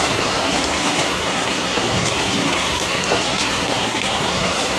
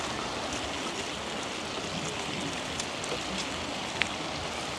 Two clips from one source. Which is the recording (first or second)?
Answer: second